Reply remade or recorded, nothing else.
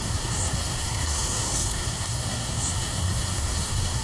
remade